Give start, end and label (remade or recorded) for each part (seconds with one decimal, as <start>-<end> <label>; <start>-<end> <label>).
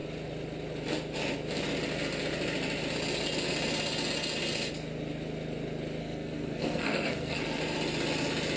0.0-6.0 recorded; 6.0-7.6 remade; 7.6-8.6 recorded